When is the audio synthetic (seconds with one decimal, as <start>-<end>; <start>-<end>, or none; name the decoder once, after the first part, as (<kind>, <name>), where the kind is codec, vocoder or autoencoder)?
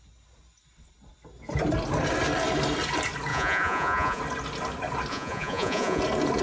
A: 3.3-4.2 (vocoder, Vocos); 5.1-6.0